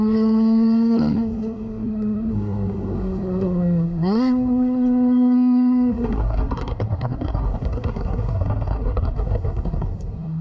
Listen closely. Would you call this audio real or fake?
fake